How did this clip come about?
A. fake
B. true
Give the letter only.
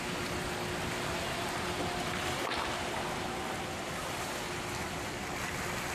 B